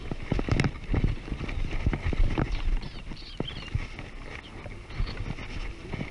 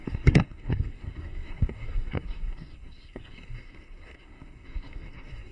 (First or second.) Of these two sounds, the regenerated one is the second